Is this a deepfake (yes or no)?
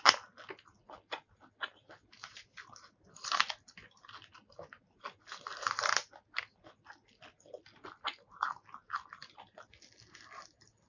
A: no